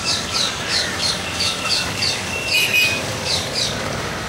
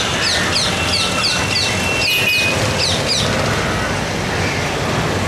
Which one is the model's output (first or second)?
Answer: first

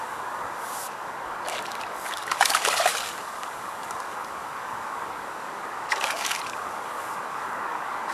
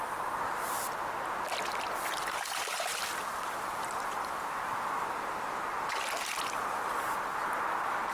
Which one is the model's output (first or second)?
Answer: first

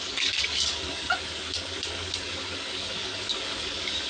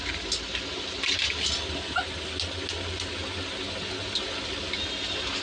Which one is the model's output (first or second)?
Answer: first